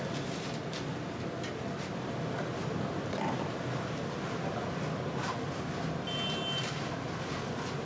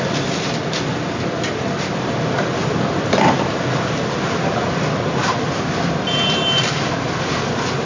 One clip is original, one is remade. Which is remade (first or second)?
second